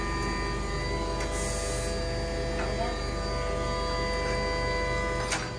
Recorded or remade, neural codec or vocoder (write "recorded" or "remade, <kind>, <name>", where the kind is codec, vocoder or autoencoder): recorded